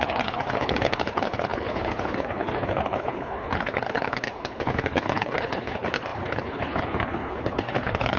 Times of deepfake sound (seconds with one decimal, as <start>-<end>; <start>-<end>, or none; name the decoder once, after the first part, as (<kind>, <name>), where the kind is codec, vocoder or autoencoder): 0.0-8.2 (codec, HILCodec)